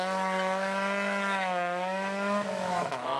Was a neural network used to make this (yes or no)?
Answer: yes